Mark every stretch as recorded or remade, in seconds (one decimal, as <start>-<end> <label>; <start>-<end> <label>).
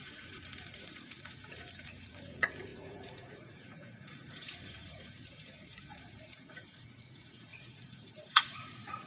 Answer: 0.0-9.1 remade